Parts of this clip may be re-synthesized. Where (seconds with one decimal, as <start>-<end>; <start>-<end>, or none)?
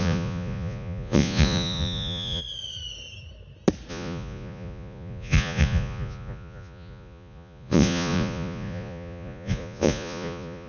0.0-2.4; 3.9-10.7